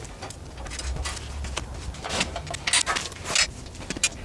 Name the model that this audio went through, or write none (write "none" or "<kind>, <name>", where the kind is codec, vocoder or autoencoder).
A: none